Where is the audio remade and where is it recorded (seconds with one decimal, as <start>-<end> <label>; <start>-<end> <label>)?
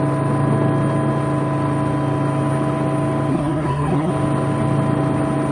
0.0-3.3 recorded; 3.3-4.1 remade; 4.1-5.5 recorded